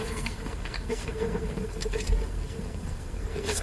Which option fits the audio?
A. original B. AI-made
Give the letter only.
B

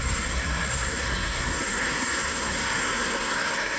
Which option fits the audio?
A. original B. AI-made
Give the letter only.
B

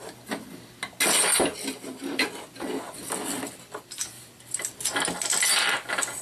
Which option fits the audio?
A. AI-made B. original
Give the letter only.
B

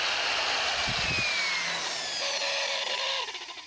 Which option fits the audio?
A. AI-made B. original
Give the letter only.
B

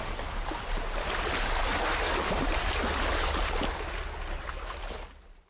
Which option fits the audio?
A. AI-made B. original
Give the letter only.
B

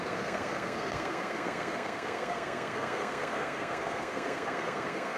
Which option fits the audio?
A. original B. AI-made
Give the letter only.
B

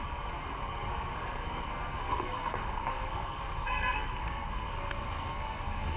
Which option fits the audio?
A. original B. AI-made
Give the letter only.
B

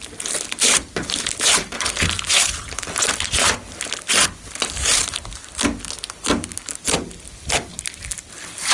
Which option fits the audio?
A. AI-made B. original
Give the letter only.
B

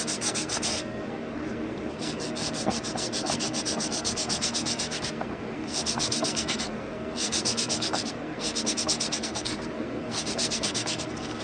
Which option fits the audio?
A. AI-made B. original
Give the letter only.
A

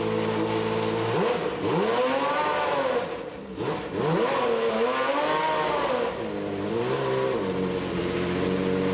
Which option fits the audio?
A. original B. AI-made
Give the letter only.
A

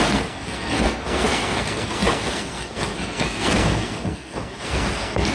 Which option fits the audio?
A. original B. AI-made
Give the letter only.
B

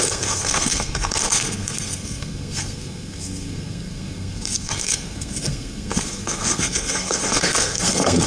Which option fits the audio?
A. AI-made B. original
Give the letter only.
A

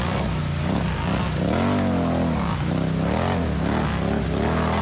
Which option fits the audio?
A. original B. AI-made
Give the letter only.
A